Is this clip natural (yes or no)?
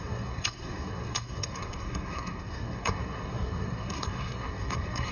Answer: no